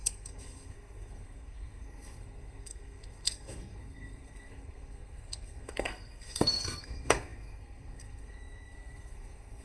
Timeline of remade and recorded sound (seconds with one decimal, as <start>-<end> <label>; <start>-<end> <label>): 0.0-9.6 remade